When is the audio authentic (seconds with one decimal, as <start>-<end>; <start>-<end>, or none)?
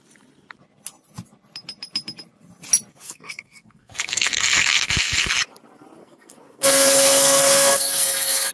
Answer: 0.0-2.9; 5.3-6.0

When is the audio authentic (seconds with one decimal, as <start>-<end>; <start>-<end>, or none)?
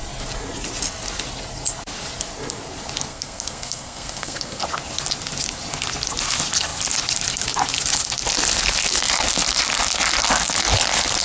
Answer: 0.0-3.1; 4.6-11.2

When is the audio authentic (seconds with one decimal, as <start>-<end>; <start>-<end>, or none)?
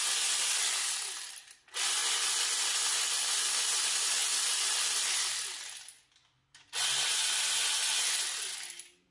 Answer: 0.0-9.1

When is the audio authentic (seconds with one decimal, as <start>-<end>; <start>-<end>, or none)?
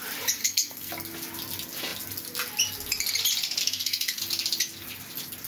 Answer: 0.0-0.4; 0.9-3.6; 4.2-5.5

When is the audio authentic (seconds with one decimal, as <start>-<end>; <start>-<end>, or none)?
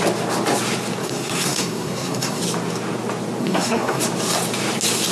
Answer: 0.0-1.0; 2.4-3.4; 4.0-5.1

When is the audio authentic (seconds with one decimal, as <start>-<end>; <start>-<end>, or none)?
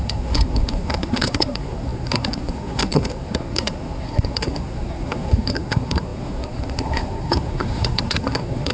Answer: none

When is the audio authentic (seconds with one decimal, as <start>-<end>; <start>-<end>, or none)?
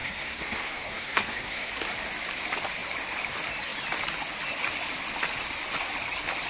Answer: 1.7-6.5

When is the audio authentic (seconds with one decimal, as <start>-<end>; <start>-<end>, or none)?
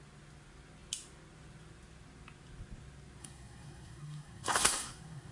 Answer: 0.0-3.2